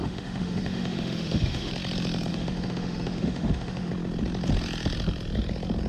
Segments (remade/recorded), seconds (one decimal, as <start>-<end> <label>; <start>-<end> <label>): 0.0-1.7 remade; 1.7-2.3 recorded; 2.3-3.9 remade; 3.9-5.9 recorded